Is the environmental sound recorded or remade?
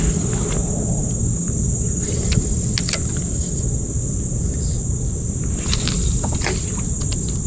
recorded